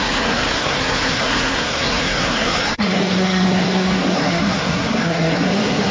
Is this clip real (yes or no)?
no